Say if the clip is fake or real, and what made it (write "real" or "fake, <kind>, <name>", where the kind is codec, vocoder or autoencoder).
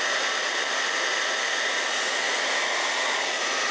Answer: real